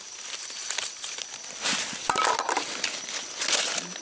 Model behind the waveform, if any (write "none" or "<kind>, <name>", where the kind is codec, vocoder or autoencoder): none